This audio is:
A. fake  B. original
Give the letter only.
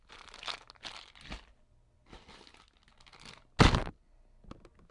B